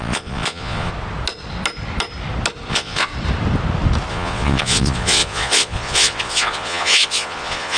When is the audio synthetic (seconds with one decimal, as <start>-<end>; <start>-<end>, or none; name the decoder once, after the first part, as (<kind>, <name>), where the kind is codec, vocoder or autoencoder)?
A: 0.0-0.9 (vocoder, Vocos); 2.7-3.1; 4.1-7.8